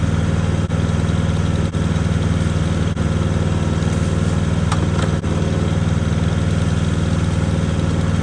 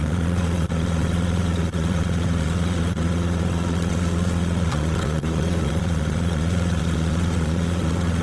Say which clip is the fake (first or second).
second